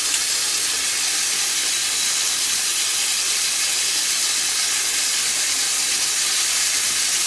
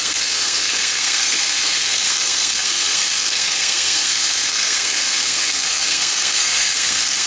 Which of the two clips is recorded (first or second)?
first